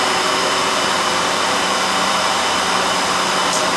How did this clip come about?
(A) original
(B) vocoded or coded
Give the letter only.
B